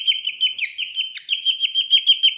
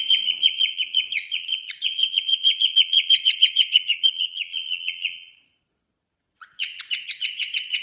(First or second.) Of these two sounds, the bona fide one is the first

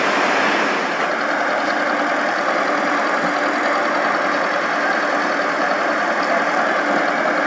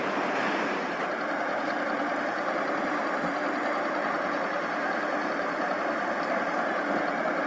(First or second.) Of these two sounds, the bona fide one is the first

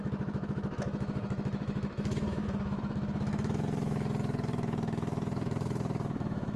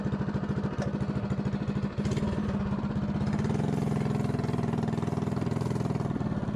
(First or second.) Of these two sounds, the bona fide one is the second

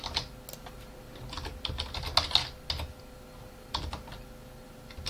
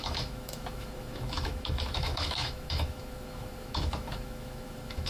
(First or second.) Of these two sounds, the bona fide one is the first